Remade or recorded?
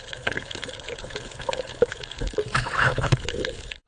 remade